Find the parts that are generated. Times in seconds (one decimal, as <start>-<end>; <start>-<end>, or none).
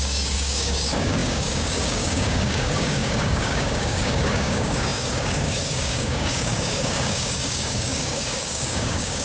0.0-9.2